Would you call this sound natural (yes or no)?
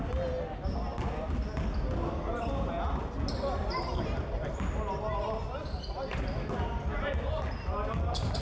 yes